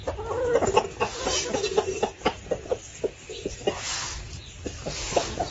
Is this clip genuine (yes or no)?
yes